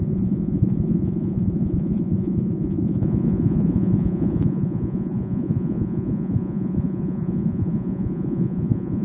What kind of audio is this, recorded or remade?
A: remade